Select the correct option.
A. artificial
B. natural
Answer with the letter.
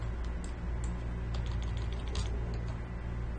B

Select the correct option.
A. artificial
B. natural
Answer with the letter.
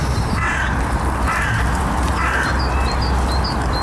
B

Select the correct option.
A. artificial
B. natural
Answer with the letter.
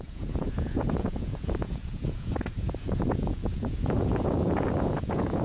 A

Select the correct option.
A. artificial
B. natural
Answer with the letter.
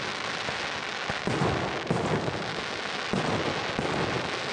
B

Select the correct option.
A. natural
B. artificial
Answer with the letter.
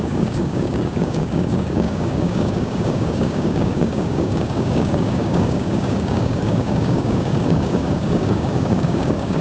B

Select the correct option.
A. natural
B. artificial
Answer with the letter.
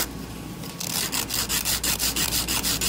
A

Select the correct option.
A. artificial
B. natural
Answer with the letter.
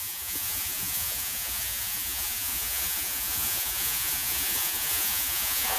A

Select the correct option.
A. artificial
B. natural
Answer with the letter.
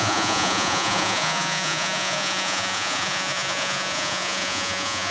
A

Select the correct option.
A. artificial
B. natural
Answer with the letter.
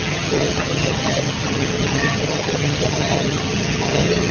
A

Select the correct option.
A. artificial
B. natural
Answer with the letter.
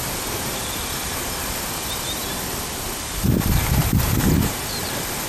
B